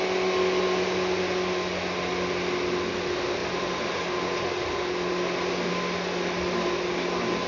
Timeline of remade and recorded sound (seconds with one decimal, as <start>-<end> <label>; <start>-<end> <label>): 0.0-7.5 recorded